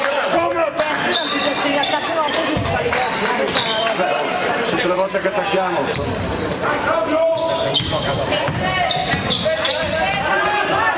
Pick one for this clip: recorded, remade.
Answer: remade